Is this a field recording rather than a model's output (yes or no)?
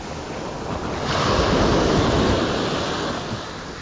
yes